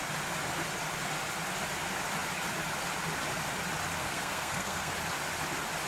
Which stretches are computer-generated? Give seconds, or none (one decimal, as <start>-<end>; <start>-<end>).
4.0-4.9